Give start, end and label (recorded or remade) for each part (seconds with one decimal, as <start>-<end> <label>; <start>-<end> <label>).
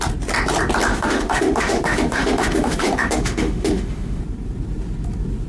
0.0-0.9 recorded; 0.9-4.2 remade; 4.2-5.5 recorded